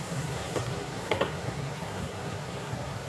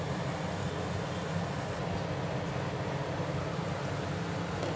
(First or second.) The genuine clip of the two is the second